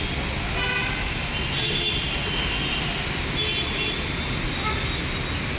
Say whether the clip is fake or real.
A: real